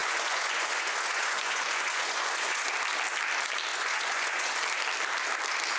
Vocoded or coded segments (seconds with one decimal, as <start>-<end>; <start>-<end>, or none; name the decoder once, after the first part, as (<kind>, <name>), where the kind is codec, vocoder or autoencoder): 0.0-2.7 (vocoder, Vocos); 3.7-4.6